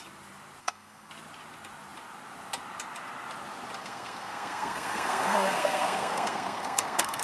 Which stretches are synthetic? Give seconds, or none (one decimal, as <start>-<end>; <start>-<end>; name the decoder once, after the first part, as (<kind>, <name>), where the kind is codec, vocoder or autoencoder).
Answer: 0.6-1.1 (codec, SNAC); 3.8-7.2